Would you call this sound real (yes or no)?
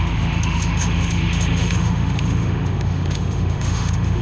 no